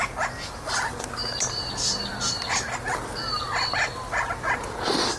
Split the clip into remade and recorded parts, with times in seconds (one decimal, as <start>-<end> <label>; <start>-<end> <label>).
0.0-5.2 recorded